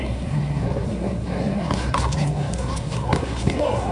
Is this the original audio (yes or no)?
no